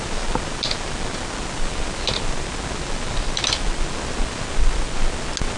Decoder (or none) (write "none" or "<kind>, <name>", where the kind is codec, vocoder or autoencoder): none